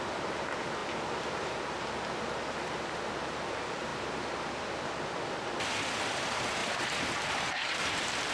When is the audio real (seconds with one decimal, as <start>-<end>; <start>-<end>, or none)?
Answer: 0.0-8.3